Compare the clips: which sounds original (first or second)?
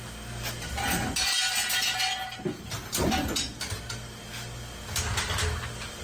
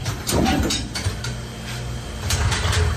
first